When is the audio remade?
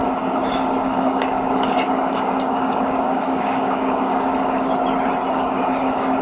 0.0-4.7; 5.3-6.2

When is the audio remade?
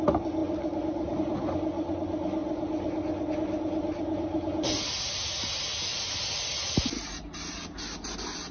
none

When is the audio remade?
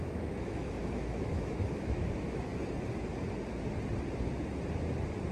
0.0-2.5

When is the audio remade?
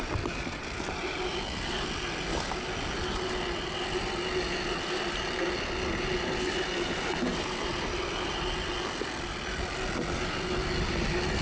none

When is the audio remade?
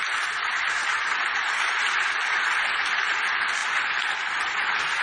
none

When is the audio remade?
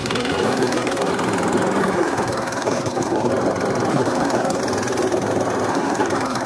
0.0-1.1; 1.8-3.3; 3.9-4.6; 5.7-6.5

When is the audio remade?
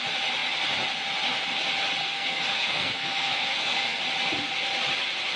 2.0-4.0